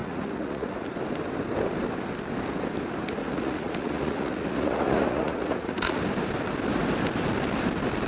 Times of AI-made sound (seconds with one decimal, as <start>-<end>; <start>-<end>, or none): 0.0-0.9; 3.2-6.0